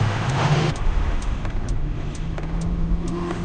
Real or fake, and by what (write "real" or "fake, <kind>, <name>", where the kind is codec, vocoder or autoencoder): fake, autoencoder, DAC-VAE